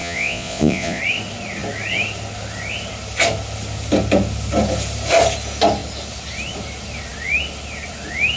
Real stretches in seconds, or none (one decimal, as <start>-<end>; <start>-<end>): 1.0-8.4